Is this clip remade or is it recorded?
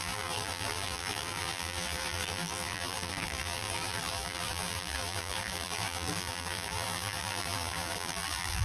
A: remade